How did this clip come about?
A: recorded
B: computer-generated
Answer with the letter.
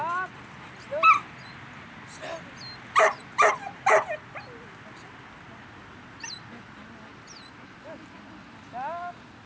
A